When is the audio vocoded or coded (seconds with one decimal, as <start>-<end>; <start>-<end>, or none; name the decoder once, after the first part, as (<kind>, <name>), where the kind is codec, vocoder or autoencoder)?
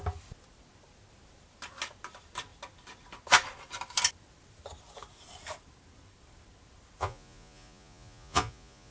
7.0-8.9 (vocoder, Vocos)